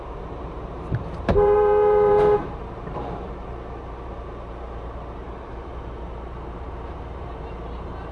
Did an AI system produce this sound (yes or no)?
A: yes